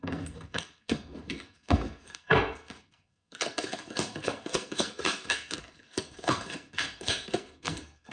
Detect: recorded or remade remade